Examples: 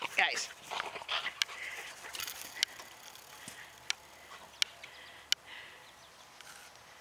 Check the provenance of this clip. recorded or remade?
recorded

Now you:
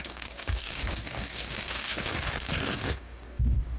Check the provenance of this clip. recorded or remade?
remade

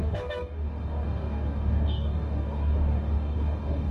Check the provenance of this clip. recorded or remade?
remade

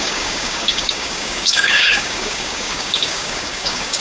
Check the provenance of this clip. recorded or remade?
remade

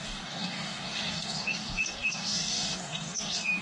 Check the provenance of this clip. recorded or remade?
remade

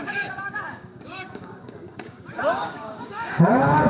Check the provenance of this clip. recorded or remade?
remade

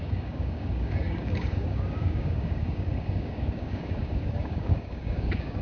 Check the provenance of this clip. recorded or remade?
remade